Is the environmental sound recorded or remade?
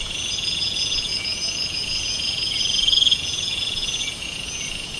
remade